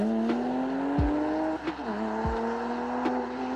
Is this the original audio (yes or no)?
yes